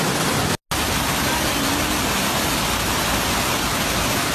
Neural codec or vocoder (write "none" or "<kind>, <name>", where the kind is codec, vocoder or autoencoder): none